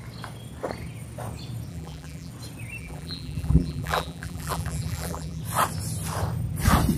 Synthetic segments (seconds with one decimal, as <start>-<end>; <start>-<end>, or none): 1.7-2.3; 2.8-5.4